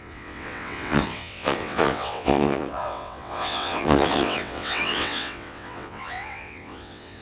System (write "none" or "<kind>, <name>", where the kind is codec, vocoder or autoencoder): vocoder, WaveNeXt